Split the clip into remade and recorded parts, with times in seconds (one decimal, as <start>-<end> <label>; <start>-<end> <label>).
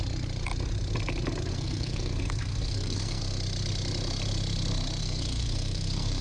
0.0-1.5 recorded; 1.5-3.2 remade; 3.2-5.0 recorded; 5.0-6.2 remade